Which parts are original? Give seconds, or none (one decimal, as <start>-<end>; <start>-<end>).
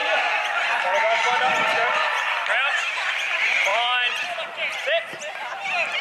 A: 0.0-6.0